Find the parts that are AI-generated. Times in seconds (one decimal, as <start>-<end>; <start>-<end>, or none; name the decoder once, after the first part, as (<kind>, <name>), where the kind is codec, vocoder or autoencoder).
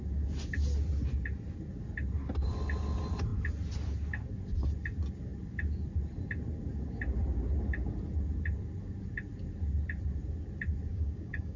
10.9-11.6 (codec, DAC)